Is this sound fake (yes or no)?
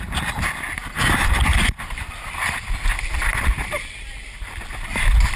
no